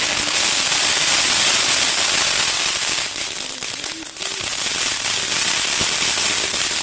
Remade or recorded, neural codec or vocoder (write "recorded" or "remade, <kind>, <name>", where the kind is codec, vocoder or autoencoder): recorded